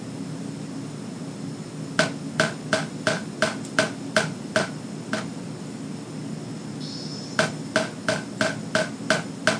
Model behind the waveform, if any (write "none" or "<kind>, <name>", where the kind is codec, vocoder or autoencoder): none